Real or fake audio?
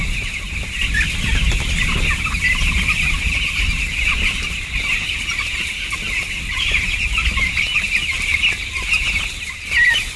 real